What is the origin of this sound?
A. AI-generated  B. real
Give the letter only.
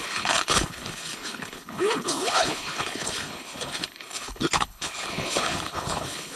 A